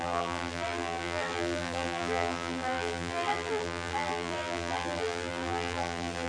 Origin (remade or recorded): remade